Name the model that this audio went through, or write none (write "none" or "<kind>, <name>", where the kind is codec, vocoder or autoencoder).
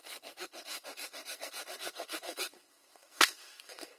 codec, SNAC